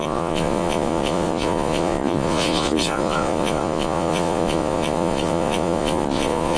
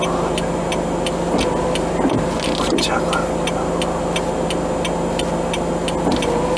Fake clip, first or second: first